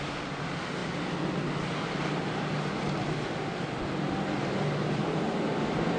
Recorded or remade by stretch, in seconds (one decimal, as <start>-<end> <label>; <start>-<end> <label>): 0.0-6.0 recorded